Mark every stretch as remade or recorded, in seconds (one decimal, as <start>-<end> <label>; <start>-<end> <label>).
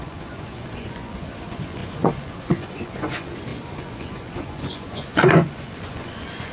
0.0-6.5 remade